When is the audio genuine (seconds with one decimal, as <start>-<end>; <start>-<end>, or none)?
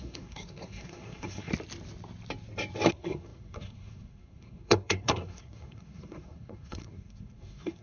1.5-2.9